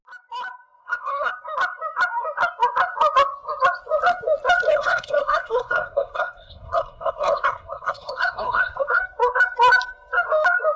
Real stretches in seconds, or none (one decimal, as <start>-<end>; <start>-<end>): 0.0-0.8; 1.3-4.7; 9.0-10.8